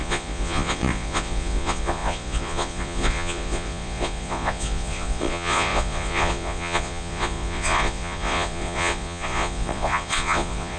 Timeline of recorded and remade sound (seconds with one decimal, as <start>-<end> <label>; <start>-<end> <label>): 0.0-10.8 remade